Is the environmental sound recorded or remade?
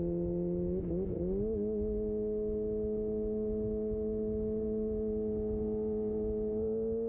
recorded